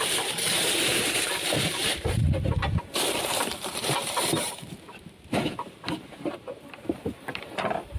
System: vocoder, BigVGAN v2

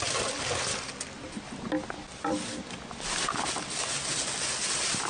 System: none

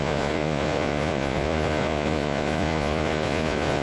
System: vocoder, Vocos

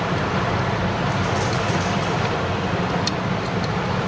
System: none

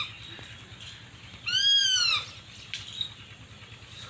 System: none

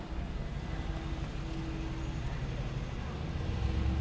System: none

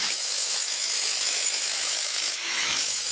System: autoencoder, DAC-VAE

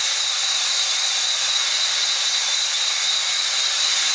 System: none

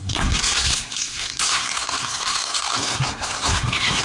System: codec, SNAC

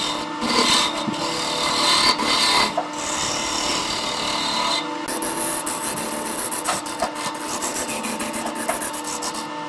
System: none